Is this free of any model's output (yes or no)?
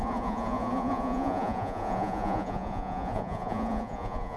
no